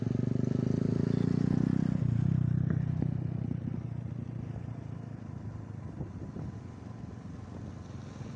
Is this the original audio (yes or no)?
yes